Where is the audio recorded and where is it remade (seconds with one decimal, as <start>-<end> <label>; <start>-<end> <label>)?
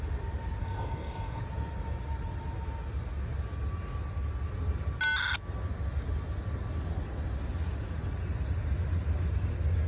0.0-0.6 recorded; 0.6-1.4 remade; 1.4-9.9 recorded